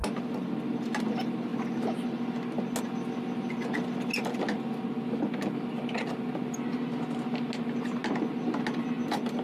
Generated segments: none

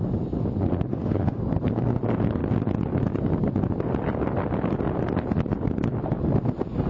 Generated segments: 0.9-1.4 (autoencoder, DAC-VAE)

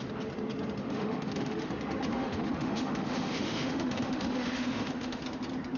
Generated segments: 0.8-1.7 (autoencoder, DAC-VAE); 2.1-5.2

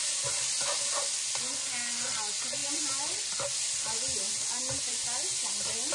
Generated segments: none

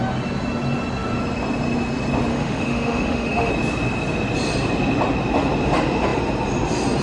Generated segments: 2.3-3.5 (autoencoder, DAC-VAE)

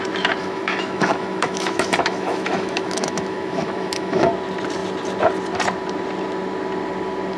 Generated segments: 0.4-4.3 (autoencoder, DAC-VAE)